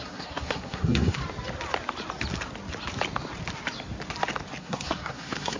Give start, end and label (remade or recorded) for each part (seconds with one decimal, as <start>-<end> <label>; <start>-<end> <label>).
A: 0.0-1.2 remade; 1.2-4.6 recorded; 4.6-5.6 remade